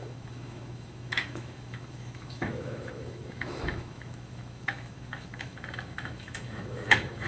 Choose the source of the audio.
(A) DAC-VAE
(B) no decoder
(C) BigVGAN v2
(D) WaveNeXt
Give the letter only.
A